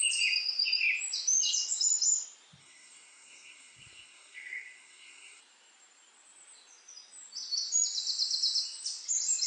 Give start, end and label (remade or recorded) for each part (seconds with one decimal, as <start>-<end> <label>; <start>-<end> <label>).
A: 0.0-2.6 recorded; 2.6-5.4 remade; 5.4-9.5 recorded